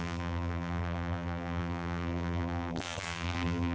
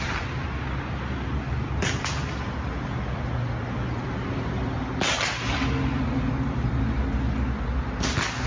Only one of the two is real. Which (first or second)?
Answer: second